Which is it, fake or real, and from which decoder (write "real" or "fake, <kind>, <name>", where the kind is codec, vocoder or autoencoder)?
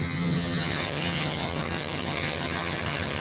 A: fake, vocoder, HiFi-GAN